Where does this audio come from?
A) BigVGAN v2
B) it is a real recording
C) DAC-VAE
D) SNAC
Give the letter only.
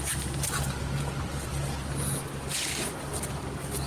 B